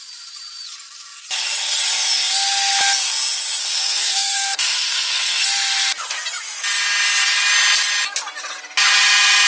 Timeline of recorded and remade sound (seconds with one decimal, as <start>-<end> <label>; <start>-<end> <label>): 0.0-3.6 recorded; 3.6-5.4 remade; 5.4-9.5 recorded

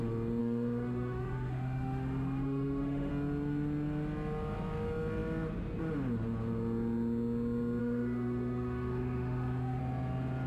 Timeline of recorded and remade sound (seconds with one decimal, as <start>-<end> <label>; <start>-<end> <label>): 0.0-0.4 recorded; 0.4-3.1 remade; 3.1-7.8 recorded; 7.8-9.8 remade; 9.8-10.5 recorded

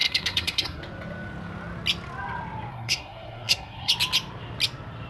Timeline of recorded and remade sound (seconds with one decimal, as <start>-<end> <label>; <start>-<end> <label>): 0.0-0.8 remade; 0.8-2.7 recorded; 2.7-3.9 remade; 3.9-5.1 recorded

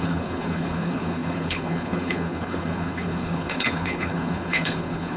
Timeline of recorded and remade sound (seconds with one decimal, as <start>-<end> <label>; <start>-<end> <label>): 0.0-5.2 remade

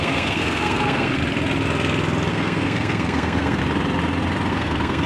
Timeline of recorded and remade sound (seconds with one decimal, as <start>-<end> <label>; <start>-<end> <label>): 0.0-1.2 remade; 1.2-2.3 recorded; 2.3-3.6 remade; 3.6-4.5 recorded; 4.5-5.1 remade

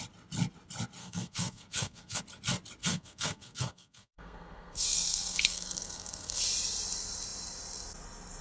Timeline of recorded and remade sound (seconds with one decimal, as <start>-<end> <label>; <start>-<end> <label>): 0.0-1.0 recorded; 1.0-2.2 remade; 2.2-2.8 recorded; 2.8-6.4 remade; 6.4-8.4 recorded